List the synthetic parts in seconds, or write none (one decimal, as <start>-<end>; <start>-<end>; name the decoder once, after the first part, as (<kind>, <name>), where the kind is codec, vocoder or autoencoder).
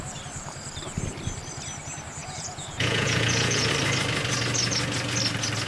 2.2-3.7 (vocoder, Vocos)